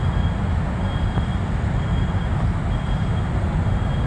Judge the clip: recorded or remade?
recorded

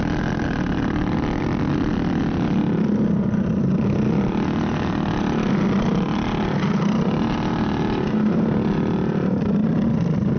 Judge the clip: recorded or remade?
recorded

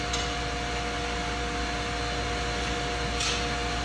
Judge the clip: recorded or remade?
recorded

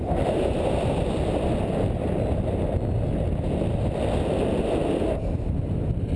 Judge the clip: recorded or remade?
recorded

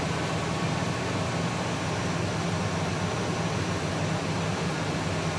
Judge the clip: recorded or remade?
recorded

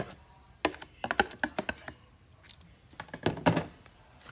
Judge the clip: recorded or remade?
recorded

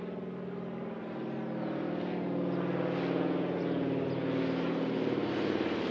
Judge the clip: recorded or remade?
recorded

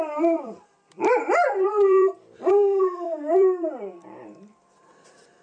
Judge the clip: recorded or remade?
remade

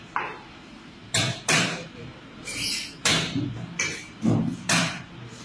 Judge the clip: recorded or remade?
remade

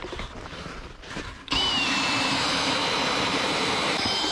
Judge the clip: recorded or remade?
remade